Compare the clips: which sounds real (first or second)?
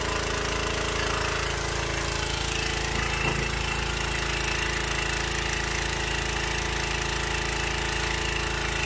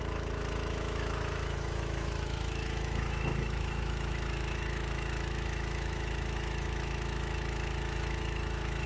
first